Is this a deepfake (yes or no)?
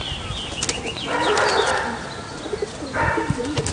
no